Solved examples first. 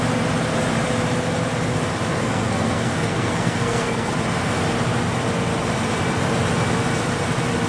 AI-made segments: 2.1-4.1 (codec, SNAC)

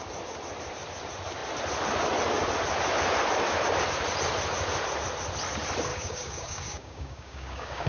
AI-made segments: 5.9-7.9 (codec, DAC)

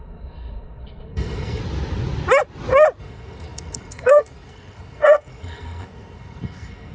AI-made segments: 0.0-1.6 (codec, SNAC); 3.0-6.9

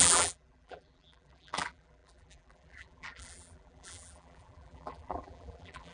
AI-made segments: 0.0-5.9 (vocoder, BigVGAN v2)

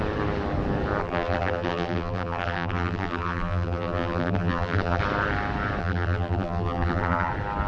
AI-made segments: 1.0-5.0 (vocoder, BigVGAN v2); 5.8-7.3

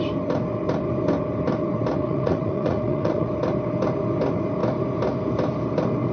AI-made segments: 2.0-3.3 (vocoder, Vocos)

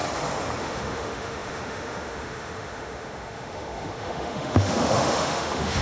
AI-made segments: 0.6-5.8 (autoencoder, DAC-VAE)